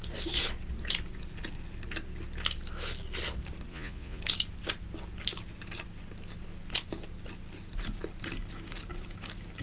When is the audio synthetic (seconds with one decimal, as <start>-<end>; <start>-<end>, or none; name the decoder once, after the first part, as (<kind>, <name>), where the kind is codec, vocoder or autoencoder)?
3.7-4.2 (vocoder, Vocos)

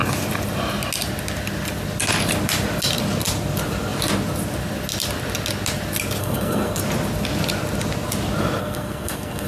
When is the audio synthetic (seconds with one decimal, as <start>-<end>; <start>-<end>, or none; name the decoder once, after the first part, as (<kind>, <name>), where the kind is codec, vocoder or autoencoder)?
6.2-6.8 (codec, SNAC); 8.6-9.5

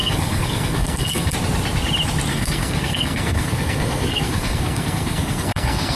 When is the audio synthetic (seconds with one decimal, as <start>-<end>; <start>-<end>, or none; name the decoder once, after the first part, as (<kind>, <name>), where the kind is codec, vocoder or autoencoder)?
0.0-1.3 (codec, SNAC); 2.3-6.0

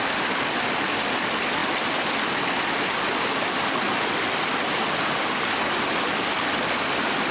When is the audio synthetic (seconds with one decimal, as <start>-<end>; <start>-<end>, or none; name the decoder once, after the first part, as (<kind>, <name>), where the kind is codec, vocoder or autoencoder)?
none

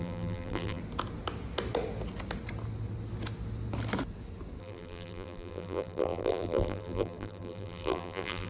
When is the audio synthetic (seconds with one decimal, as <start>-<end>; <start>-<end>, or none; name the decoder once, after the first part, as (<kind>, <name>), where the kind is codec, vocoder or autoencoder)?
0.0-0.8 (vocoder, BigVGAN v2); 4.6-8.5